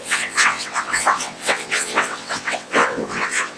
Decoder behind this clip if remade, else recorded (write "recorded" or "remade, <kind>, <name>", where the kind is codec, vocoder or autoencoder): remade, vocoder, WaveNeXt